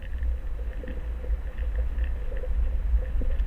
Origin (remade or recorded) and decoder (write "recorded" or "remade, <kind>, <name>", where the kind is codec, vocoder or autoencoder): recorded